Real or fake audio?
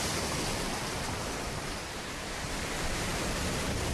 fake